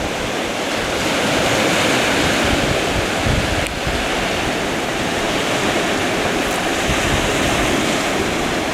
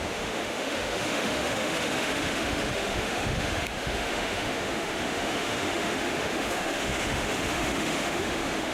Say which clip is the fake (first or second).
second